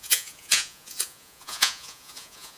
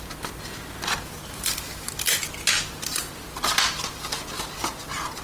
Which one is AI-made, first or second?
first